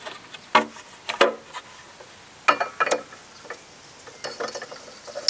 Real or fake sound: real